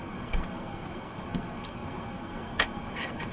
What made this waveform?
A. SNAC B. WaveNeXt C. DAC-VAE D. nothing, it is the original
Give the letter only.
A